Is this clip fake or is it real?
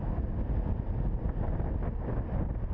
real